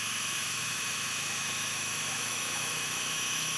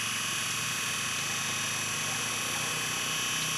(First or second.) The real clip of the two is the second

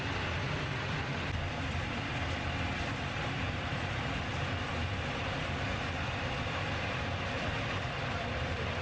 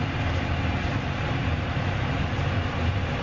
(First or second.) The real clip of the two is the second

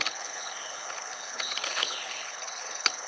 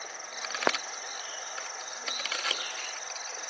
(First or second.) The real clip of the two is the second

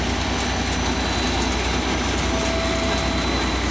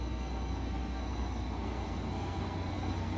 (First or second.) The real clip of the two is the first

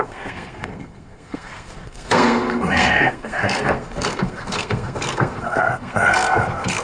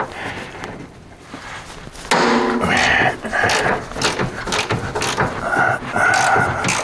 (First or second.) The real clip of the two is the second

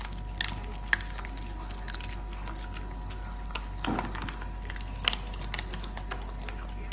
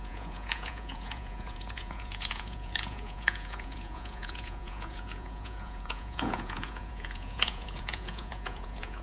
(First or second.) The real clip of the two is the first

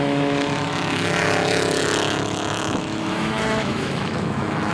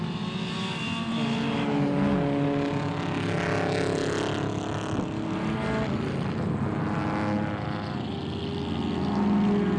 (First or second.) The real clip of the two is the second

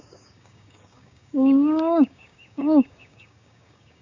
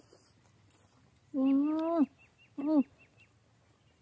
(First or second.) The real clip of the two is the second